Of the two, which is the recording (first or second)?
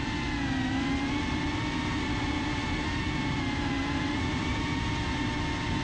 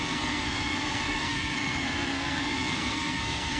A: first